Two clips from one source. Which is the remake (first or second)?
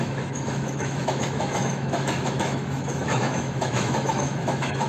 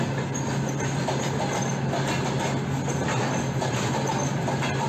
first